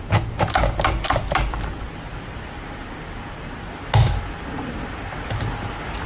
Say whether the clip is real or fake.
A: real